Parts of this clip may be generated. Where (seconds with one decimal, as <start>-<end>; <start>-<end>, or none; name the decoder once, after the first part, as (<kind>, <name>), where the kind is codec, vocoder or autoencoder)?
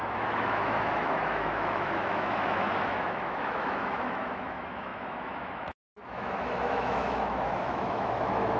0.0-8.6 (autoencoder, DAC-VAE)